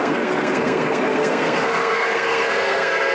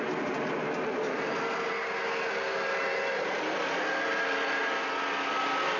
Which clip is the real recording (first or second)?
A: second